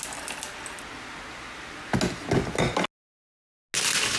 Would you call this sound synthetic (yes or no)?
no